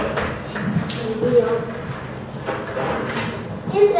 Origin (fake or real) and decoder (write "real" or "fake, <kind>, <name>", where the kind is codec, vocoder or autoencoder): real